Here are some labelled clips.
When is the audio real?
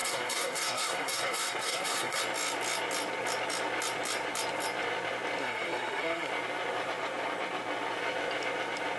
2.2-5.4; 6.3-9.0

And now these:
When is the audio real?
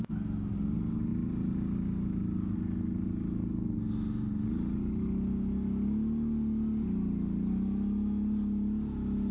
0.0-9.3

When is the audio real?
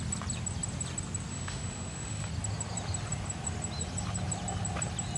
0.0-1.3; 2.3-5.2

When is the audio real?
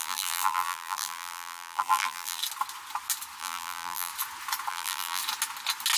2.4-3.4; 4.1-4.7; 5.2-6.0